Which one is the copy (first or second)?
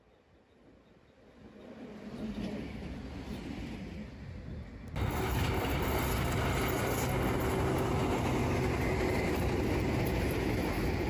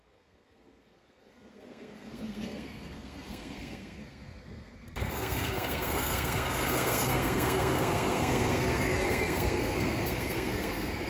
second